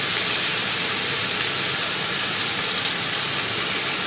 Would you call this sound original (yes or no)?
yes